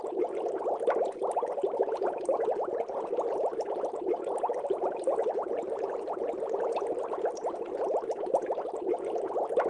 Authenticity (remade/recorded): recorded